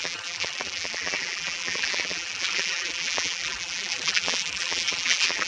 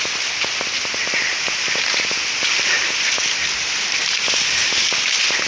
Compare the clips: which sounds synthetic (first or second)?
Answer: first